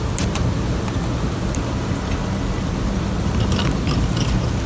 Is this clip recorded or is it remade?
recorded